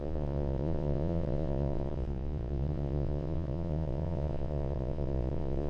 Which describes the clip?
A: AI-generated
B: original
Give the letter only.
A